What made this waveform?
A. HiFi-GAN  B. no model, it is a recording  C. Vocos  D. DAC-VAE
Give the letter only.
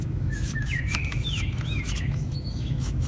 D